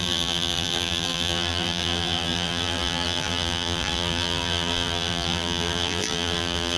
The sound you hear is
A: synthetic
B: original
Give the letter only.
A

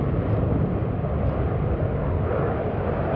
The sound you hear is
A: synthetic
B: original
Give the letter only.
B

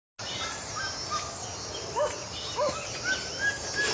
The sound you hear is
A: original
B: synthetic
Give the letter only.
A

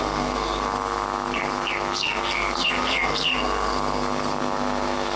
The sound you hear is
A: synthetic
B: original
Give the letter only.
A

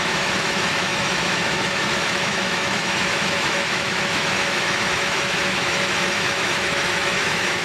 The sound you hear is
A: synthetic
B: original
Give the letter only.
A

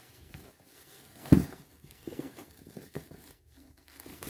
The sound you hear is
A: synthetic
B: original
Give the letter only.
A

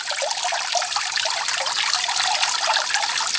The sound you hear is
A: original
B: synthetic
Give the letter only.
A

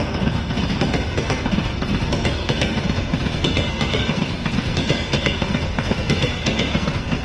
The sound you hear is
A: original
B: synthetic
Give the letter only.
B